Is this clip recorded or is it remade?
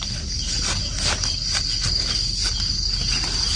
recorded